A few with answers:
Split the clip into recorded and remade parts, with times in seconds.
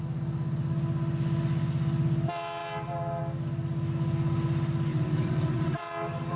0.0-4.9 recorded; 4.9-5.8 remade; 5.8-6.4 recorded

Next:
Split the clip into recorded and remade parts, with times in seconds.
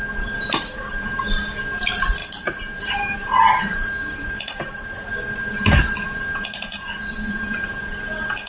0.0-2.2 recorded; 2.2-5.1 remade; 5.1-8.5 recorded